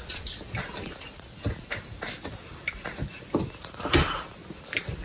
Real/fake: real